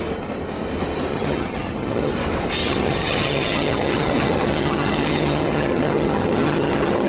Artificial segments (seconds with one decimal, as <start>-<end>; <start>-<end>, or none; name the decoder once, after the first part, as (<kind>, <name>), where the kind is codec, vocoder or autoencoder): 1.1-2.1 (vocoder, HiFi-GAN); 2.6-7.1

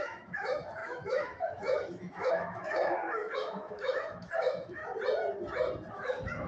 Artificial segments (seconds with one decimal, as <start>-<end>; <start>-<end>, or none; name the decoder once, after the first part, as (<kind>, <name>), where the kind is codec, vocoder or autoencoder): 0.0-4.8 (autoencoder, DAC-VAE); 5.9-6.5

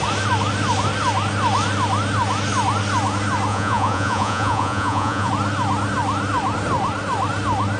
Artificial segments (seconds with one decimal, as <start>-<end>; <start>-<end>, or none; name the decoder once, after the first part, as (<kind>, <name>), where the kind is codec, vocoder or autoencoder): 3.5-5.3 (vocoder, Vocos)

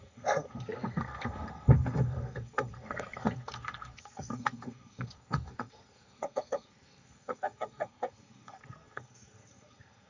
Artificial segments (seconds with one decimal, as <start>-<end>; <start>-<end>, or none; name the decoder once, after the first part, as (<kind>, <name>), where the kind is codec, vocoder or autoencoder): 0.0-10.1 (codec, SNAC)

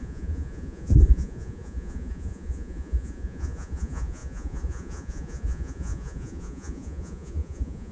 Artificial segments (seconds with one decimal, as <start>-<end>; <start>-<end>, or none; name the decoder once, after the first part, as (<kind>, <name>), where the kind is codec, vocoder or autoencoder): 0.0-7.9 (vocoder, Vocos)